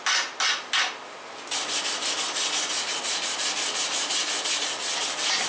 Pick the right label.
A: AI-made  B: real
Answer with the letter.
B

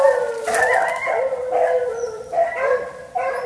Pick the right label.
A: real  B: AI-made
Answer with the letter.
A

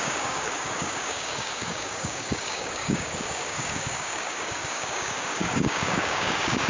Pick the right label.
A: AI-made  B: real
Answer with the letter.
A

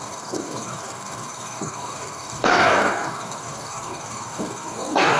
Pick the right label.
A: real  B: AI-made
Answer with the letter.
B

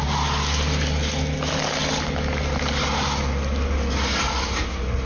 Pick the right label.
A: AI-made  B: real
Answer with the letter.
B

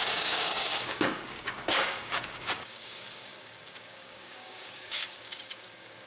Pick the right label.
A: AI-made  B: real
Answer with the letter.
A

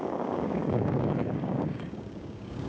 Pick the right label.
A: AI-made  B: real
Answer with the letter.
A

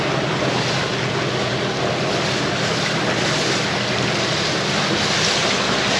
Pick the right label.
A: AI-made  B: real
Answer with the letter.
B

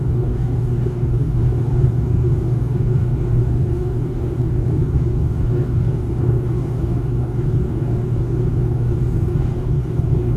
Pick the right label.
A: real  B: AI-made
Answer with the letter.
B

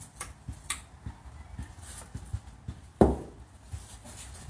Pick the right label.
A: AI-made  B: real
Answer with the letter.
B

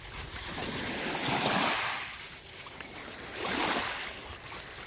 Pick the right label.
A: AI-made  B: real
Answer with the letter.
B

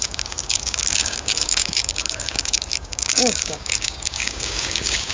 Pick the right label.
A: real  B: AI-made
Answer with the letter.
B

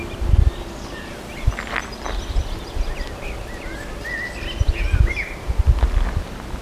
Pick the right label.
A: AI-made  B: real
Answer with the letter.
B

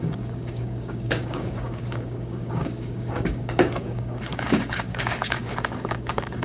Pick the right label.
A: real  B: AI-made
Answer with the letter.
B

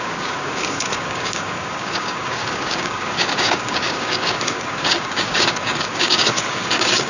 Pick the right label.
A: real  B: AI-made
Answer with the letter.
B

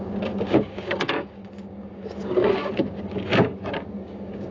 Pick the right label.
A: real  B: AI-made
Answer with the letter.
B